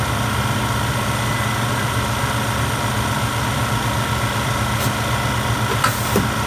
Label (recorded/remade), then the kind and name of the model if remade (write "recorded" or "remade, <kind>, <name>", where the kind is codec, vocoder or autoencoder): recorded